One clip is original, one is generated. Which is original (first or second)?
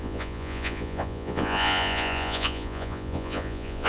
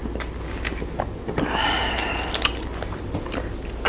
second